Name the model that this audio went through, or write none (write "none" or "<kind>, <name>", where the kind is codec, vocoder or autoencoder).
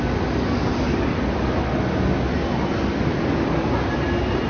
none